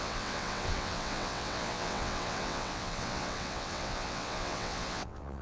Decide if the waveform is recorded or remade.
remade